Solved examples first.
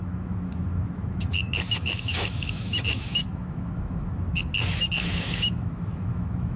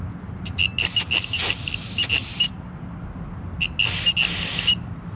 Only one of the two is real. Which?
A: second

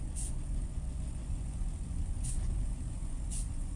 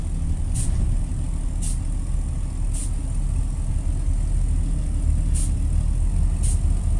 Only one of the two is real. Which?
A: second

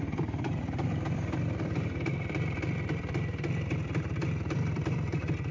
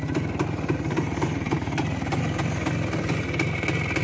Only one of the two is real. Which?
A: second